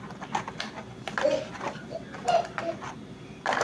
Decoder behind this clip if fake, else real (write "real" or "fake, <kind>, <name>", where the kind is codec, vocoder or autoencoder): fake, vocoder, BigVGAN v2